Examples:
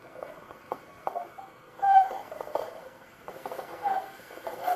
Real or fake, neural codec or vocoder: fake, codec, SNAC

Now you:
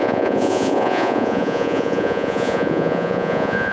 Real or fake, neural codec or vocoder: fake, vocoder, Vocos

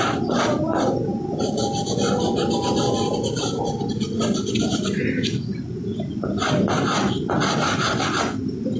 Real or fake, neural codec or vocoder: real